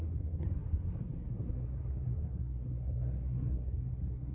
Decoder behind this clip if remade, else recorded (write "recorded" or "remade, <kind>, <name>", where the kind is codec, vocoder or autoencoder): remade, codec, SNAC